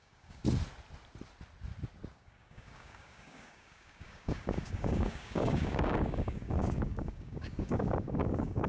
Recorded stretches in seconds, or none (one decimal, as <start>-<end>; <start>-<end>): 0.4-2.1